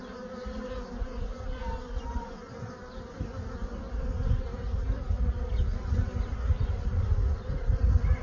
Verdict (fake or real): real